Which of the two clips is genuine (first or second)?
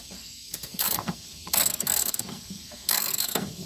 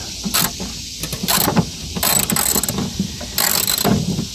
second